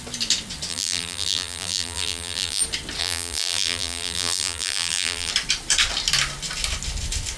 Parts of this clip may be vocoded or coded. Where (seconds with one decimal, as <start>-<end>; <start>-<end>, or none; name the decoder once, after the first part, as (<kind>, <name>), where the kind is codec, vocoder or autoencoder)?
0.7-2.6 (vocoder, BigVGAN v2); 3.0-5.3